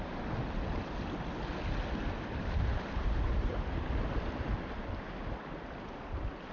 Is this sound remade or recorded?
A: recorded